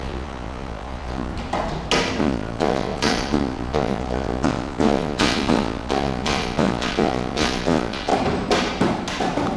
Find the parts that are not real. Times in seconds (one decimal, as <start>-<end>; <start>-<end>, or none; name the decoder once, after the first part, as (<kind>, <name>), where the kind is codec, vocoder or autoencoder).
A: 0.0-1.3 (vocoder, Vocos); 2.2-8.1